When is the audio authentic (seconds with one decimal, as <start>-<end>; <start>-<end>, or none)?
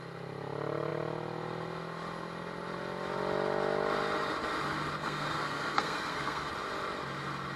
0.0-5.0; 6.5-7.6